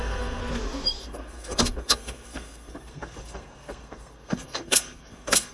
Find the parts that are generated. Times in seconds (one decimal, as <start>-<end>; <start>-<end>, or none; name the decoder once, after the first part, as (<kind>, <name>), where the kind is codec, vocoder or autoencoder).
0.0-0.4 (codec, SNAC); 1.0-5.5